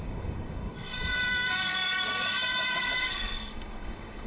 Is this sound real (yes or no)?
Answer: no